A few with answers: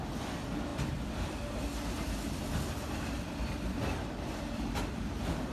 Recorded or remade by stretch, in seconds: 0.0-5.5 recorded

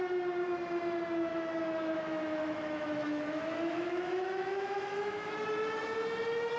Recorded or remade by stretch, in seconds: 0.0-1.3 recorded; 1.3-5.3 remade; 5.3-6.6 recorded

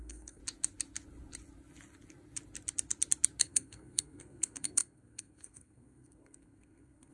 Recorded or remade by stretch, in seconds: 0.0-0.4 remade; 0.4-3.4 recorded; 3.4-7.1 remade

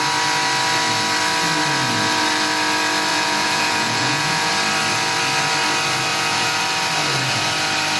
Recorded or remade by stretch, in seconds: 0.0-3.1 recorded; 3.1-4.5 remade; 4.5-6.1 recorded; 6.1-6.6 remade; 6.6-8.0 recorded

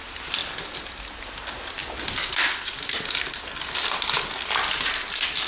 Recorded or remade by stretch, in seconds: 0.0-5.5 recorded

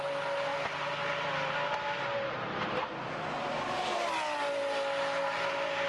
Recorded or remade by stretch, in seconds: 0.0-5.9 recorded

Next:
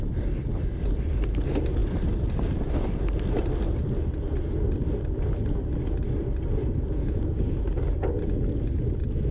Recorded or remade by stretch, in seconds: 0.0-6.6 recorded; 6.6-7.4 remade; 7.4-9.3 recorded

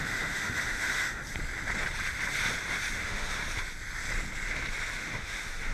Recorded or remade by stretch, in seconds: 0.0-1.2 remade; 1.2-3.0 recorded; 3.0-3.4 remade; 3.4-5.0 recorded; 5.0-5.7 remade